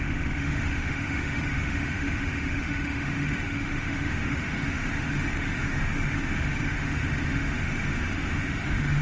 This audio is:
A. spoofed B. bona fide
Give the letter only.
A